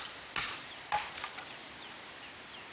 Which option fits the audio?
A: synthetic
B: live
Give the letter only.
B